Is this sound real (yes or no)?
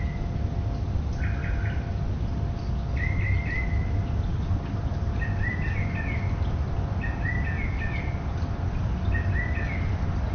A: yes